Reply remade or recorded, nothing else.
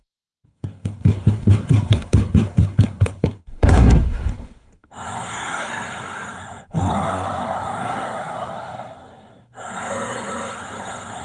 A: remade